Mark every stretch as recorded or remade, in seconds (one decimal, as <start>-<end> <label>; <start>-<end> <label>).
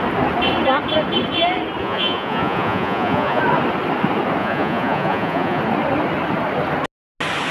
0.0-1.8 recorded; 1.8-3.4 remade; 3.4-4.4 recorded; 4.4-5.6 remade; 5.6-7.5 recorded